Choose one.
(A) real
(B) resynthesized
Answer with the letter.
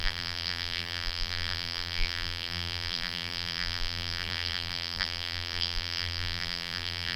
B